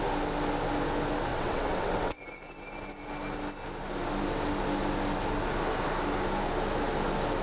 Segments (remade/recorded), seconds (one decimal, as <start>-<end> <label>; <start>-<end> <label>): 0.0-1.3 recorded; 1.3-2.2 remade; 2.2-7.4 recorded